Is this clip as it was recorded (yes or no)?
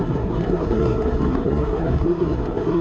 no